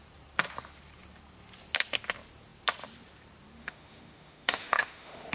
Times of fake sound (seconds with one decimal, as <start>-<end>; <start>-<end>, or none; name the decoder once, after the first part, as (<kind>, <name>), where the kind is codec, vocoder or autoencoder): 3.6-5.3 (autoencoder, DAC-VAE)